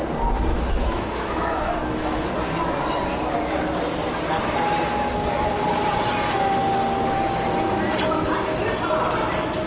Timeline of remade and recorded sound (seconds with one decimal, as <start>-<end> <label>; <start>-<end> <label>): 0.0-0.5 recorded; 0.5-2.3 remade; 2.3-9.7 recorded